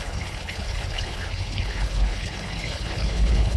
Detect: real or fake fake